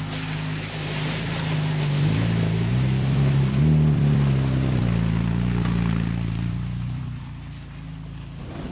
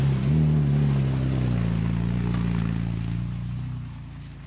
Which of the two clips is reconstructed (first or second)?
first